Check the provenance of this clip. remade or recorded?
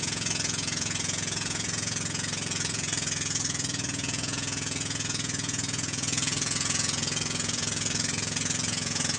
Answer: remade